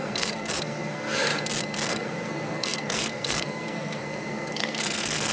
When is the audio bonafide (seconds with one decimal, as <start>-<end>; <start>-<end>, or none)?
1.3-1.9

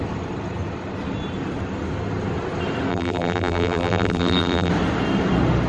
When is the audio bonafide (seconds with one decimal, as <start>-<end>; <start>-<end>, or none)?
0.0-2.9; 4.7-5.7

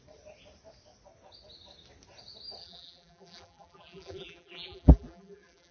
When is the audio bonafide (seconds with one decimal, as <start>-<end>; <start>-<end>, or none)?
0.0-2.6

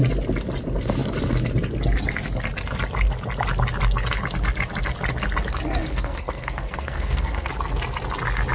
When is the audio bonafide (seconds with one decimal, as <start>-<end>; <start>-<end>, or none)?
0.0-5.8; 7.5-8.5

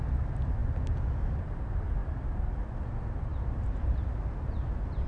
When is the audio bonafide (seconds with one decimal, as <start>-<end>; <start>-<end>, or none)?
0.0-3.3; 3.9-5.1

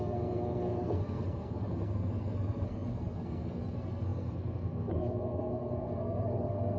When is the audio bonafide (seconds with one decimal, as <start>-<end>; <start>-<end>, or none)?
none

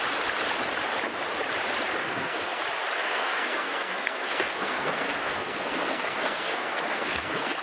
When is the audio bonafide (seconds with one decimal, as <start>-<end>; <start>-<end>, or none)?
0.0-2.0; 2.6-3.0